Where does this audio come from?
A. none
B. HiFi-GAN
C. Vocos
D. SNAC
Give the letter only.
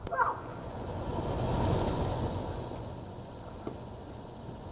C